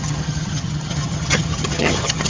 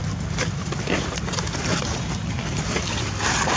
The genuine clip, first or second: second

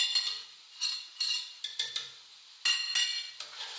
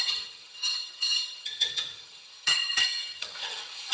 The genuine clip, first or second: first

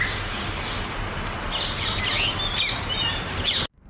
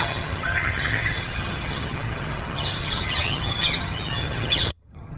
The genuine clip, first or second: first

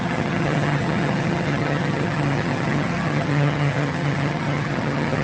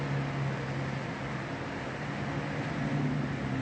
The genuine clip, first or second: second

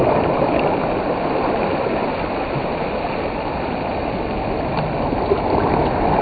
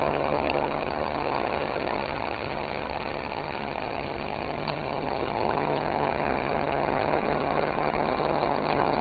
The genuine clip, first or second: first